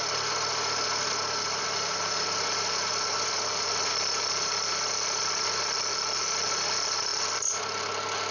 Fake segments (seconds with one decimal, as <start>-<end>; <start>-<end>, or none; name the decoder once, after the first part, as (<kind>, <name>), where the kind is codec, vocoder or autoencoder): none

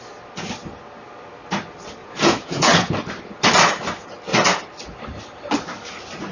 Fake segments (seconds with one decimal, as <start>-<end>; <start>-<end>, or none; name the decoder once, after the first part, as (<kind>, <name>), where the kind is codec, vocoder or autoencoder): 2.0-2.9 (vocoder, Vocos)

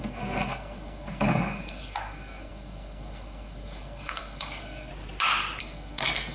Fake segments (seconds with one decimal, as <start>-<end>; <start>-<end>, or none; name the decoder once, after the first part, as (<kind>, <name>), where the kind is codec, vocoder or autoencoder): 0.0-4.9 (codec, SNAC); 5.6-6.3